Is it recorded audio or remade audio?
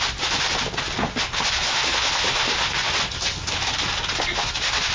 recorded